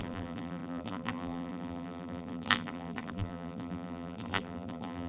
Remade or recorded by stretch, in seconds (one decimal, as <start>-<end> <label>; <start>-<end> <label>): 0.0-5.1 remade